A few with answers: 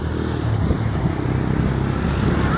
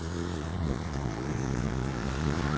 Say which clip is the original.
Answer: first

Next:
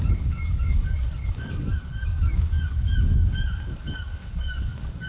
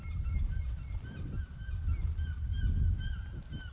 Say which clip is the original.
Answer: second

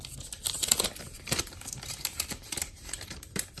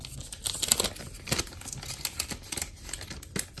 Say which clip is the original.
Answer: second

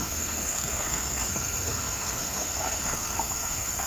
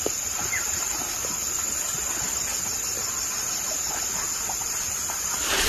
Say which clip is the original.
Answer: second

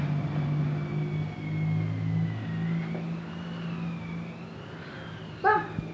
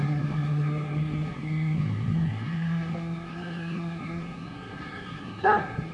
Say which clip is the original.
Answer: first